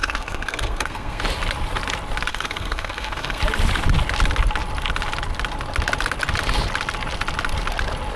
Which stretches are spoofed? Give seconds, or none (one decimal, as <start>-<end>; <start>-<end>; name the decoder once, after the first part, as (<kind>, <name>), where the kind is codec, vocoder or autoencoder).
0.0-1.2 (codec, SNAC); 2.3-3.4